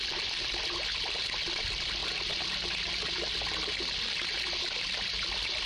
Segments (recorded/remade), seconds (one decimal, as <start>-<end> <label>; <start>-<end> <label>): 0.0-5.7 recorded